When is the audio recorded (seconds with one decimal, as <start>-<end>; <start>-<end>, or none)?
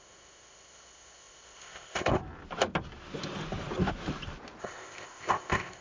2.2-4.6